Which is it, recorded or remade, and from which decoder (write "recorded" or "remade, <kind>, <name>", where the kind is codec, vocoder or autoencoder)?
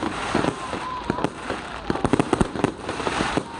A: remade, vocoder, BigVGAN v2